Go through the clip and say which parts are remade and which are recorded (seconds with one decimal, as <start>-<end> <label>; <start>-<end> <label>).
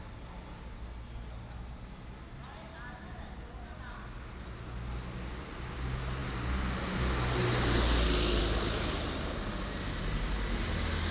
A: 0.0-11.1 recorded